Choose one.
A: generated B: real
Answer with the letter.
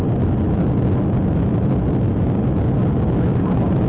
B